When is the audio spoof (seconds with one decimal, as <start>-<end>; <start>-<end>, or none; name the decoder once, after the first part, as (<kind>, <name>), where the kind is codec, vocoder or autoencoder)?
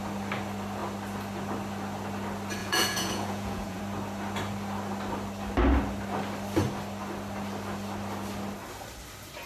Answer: 2.6-3.8 (vocoder, Vocos)